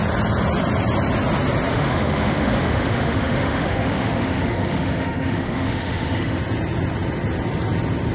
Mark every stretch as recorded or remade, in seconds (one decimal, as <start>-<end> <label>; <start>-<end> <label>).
0.0-1.7 recorded; 1.7-6.4 remade; 6.4-8.1 recorded